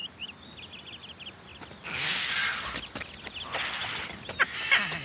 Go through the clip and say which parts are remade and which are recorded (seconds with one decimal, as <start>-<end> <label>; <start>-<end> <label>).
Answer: 0.0-5.0 recorded